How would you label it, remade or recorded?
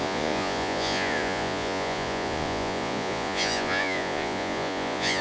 remade